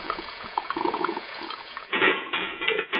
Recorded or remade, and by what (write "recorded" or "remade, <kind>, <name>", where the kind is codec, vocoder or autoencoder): remade, vocoder, Vocos